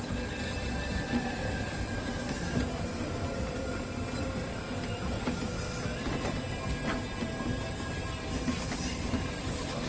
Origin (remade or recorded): recorded